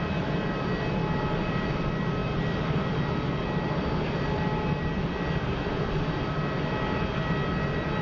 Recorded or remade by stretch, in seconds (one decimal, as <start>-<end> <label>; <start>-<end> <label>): 0.0-8.0 recorded